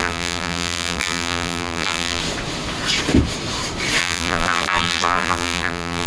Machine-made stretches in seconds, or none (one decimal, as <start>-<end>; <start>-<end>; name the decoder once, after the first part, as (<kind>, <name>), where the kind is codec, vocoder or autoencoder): 0.0-2.2 (vocoder, BigVGAN v2); 4.0-6.1